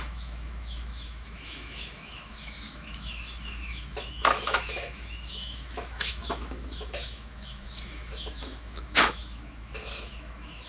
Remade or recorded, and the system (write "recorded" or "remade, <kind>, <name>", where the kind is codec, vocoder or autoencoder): remade, autoencoder, DAC-VAE